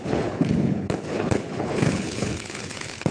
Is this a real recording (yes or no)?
no